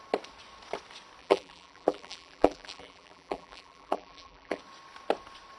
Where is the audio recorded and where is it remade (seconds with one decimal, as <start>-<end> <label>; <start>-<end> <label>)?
0.0-1.2 recorded; 1.2-4.6 remade; 4.6-5.6 recorded